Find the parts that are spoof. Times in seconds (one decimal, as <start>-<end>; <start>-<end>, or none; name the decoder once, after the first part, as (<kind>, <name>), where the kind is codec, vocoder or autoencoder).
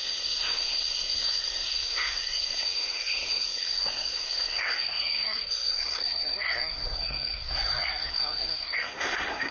0.0-9.5 (codec, SNAC)